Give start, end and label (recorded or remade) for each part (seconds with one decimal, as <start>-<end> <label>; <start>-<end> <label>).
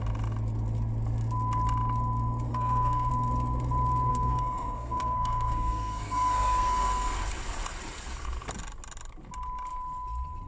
0.0-2.5 recorded; 2.5-3.1 remade; 3.1-4.1 recorded; 4.1-7.2 remade; 7.2-10.5 recorded